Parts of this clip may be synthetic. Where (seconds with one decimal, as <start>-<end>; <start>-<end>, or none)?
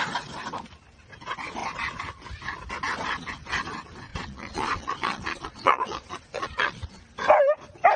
4.1-7.0